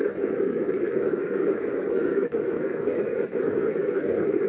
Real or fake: fake